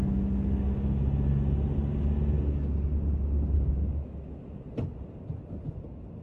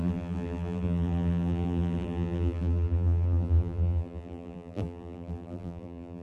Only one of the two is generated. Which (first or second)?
second